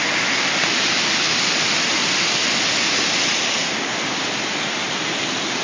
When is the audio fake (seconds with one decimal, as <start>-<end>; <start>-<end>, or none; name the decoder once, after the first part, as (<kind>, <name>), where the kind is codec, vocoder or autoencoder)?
2.0-3.2 (vocoder, BigVGAN v2); 3.6-5.6